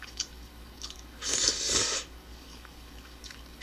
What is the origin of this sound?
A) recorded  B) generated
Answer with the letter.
B